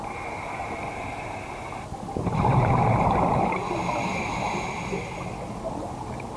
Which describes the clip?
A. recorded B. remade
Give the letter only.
A